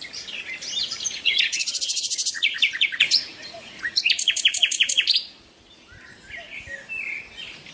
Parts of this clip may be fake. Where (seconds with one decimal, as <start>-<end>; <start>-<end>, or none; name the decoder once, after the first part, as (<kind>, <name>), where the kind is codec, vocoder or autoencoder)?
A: 0.8-5.4 (vocoder, Vocos)